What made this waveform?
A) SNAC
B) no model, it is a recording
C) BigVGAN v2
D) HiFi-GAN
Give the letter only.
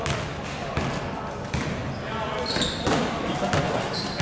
B